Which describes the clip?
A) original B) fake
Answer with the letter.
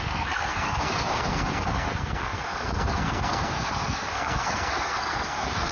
B